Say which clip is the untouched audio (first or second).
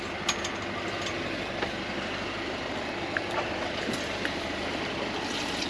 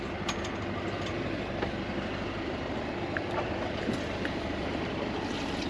first